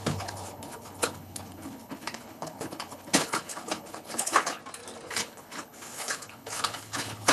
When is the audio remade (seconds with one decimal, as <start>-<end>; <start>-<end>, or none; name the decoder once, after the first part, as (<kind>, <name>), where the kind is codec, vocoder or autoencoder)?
0.0-4.6 (codec, HILCodec); 5.1-7.3